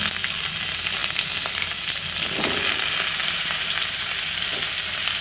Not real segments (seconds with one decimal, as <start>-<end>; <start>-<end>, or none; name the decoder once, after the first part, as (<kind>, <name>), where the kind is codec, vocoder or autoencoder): 3.2-4.0 (vocoder, BigVGAN v2)